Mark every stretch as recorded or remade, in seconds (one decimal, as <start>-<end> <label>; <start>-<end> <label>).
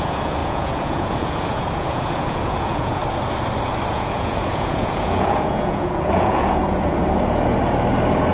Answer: 0.0-3.0 remade; 3.0-3.9 recorded; 3.9-7.0 remade; 7.0-8.3 recorded